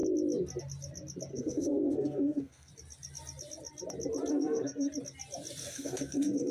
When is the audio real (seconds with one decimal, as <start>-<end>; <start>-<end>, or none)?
0.0-1.3; 2.7-4.3; 4.9-5.6